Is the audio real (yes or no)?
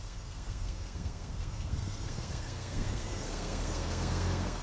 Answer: no